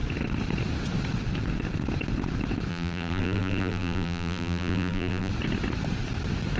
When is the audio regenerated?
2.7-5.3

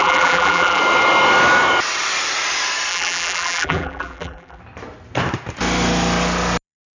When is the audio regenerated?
0.0-0.8; 2.9-4.6

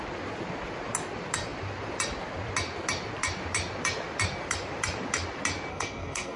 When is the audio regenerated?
5.7-6.4

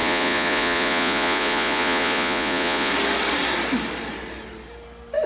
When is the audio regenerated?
0.0-2.9

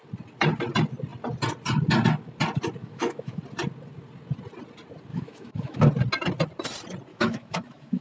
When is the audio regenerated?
2.8-3.4; 5.1-5.8; 7.1-8.0